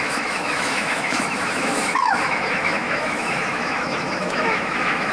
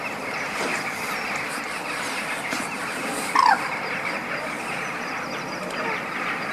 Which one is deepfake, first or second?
first